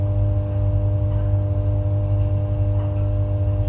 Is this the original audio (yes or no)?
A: yes